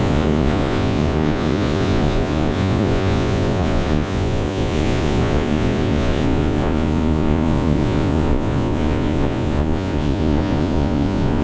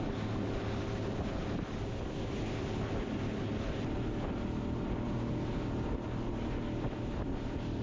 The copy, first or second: first